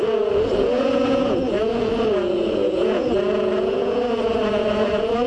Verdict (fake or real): fake